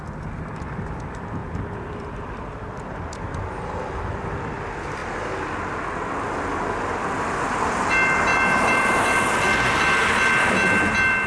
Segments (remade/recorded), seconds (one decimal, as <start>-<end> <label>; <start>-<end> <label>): 0.0-1.4 recorded; 1.4-4.2 remade; 4.2-8.3 recorded; 8.3-9.3 remade; 9.3-11.3 recorded